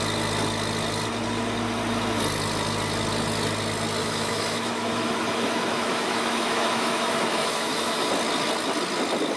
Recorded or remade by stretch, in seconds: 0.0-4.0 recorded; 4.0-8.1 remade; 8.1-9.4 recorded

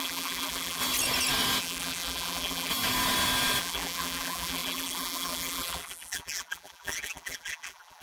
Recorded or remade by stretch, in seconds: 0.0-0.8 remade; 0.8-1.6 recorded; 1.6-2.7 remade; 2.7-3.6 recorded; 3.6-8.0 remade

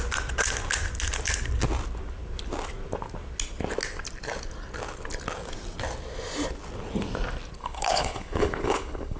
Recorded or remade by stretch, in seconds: 0.0-7.6 recorded; 7.6-9.2 remade

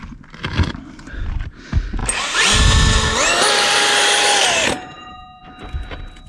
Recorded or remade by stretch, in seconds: 0.0-6.3 recorded

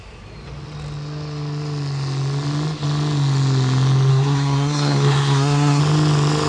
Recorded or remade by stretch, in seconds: 0.0-4.1 recorded; 4.1-5.8 remade; 5.8-6.5 recorded